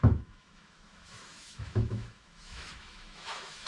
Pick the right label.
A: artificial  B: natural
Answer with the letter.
A